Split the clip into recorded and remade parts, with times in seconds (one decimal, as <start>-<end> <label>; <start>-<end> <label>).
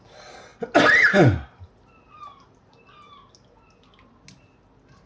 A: 0.0-5.1 recorded